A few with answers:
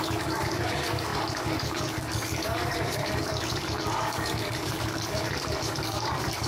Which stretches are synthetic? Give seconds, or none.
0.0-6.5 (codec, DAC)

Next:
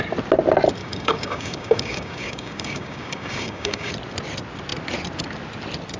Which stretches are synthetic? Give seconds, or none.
0.8-3.9 (codec, DAC)

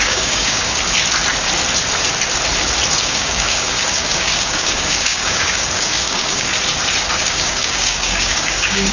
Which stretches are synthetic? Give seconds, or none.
0.0-0.7 (codec, DAC); 3.0-6.5; 7.1-8.9

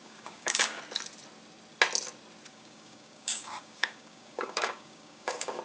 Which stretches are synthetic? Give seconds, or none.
0.0-0.8 (codec, DAC); 2.5-5.6

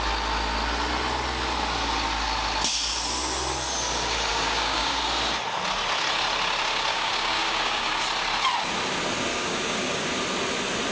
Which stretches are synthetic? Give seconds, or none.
4.3-5.0 (codec, DAC); 6.9-8.0; 9.3-10.1

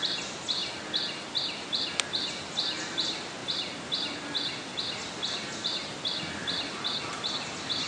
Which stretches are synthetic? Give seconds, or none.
none

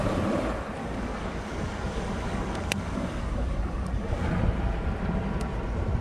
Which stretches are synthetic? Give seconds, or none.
0.8-4.3 (codec, DAC)